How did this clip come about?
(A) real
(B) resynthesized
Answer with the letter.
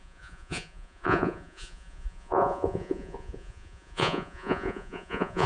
B